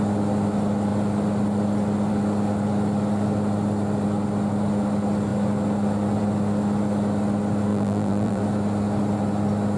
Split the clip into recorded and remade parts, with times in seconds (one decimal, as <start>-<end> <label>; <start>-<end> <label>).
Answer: 0.0-7.7 recorded; 7.7-8.4 remade; 8.4-9.8 recorded